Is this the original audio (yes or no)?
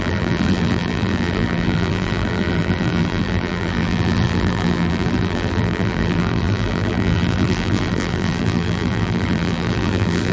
no